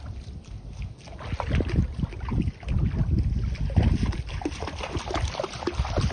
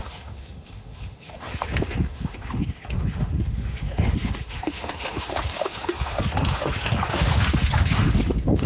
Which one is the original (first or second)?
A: first